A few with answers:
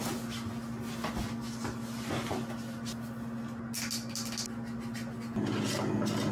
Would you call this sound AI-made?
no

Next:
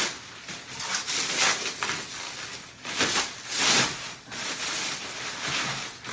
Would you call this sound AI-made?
no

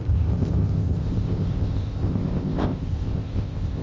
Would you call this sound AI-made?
yes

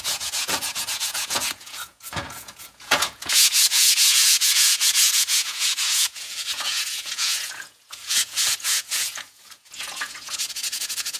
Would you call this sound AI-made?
yes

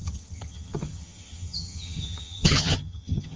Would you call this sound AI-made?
yes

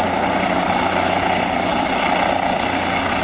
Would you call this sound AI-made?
no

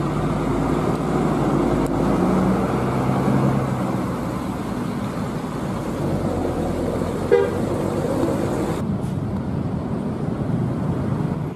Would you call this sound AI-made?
no